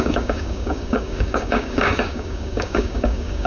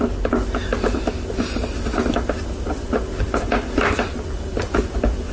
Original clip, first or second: second